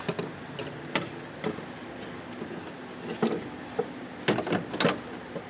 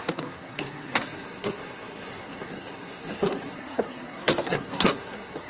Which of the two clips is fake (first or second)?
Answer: second